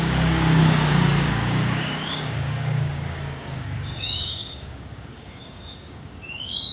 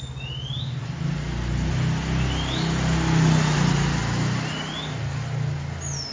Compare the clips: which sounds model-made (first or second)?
first